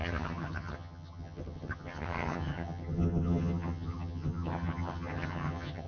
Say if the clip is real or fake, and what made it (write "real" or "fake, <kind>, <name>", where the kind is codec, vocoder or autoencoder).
fake, vocoder, HiFi-GAN